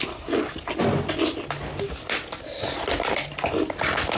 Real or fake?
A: real